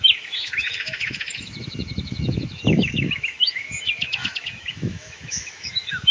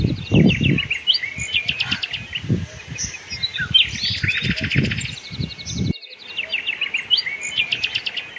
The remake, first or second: first